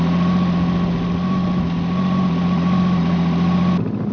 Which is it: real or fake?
real